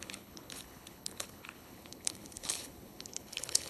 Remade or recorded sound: remade